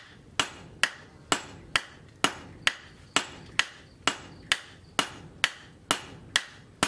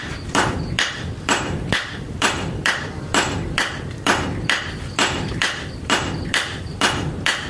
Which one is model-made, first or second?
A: second